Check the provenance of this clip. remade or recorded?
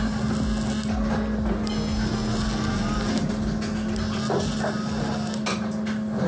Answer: recorded